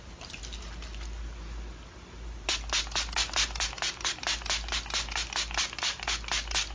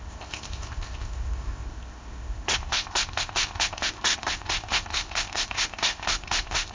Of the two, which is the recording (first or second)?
first